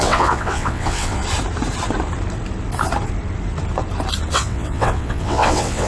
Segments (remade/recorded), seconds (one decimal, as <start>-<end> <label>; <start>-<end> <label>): 0.0-1.2 remade; 1.2-4.3 recorded; 4.3-5.9 remade